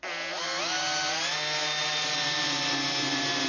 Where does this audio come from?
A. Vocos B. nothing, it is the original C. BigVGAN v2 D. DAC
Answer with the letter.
B